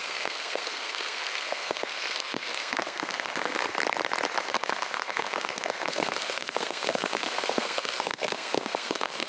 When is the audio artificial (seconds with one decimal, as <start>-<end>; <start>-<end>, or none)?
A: 0.0-3.7; 4.4-9.3